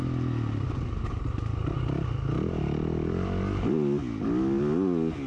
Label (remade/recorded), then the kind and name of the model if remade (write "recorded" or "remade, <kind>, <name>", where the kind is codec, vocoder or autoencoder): recorded